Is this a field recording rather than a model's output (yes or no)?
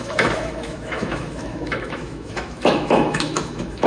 no